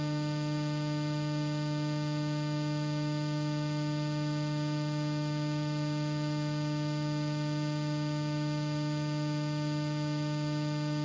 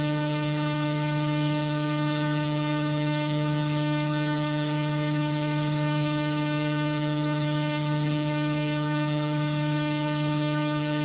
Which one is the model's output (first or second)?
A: second